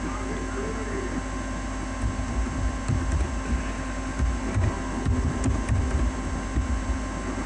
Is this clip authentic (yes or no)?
yes